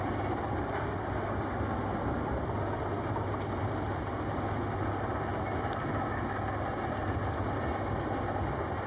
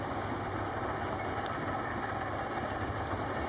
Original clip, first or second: first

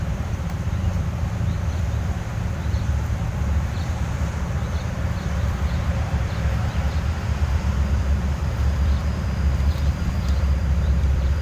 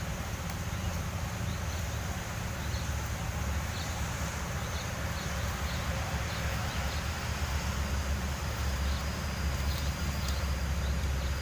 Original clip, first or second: second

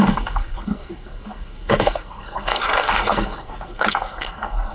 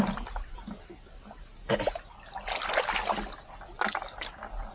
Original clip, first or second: second